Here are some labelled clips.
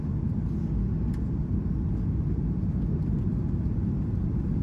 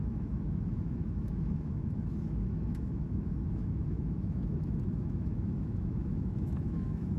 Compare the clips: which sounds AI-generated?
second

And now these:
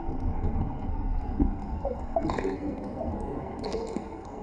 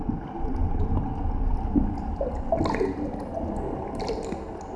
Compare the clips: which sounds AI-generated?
first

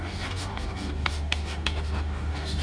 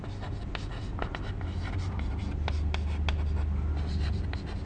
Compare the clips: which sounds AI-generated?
first